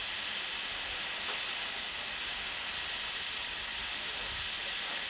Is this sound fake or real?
real